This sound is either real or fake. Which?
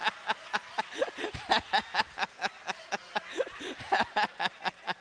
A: real